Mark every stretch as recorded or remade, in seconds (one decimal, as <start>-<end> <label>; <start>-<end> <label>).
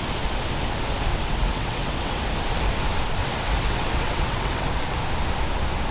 0.0-1.1 recorded; 1.1-2.2 remade; 2.2-3.2 recorded; 3.2-4.7 remade; 4.7-5.9 recorded